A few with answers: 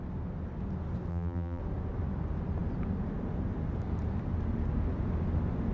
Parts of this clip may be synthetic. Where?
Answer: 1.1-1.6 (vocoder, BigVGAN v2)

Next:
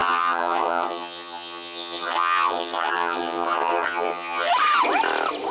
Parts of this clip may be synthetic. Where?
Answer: 0.0-4.5 (vocoder, HiFi-GAN)

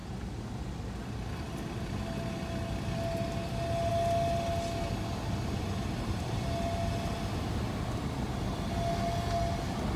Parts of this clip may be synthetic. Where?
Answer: none

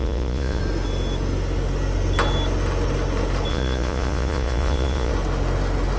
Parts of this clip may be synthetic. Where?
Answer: 0.0-0.6 (vocoder, Vocos); 3.5-5.1

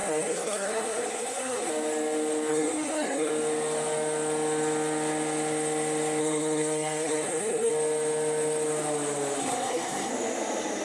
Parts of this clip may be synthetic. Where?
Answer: 0.0-1.7 (codec, SNAC); 2.5-3.3; 6.2-7.7; 9.4-10.1

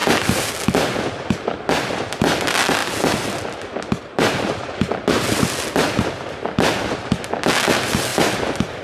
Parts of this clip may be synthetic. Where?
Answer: 0.0-0.5 (vocoder, BigVGAN v2); 8.1-8.8

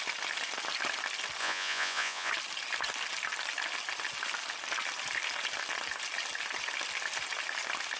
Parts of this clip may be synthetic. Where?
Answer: 1.4-2.3 (vocoder, Vocos)

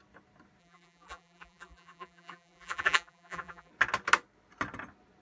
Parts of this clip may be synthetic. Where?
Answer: 0.6-3.7 (vocoder, BigVGAN v2)